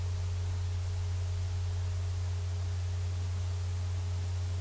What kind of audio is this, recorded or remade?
recorded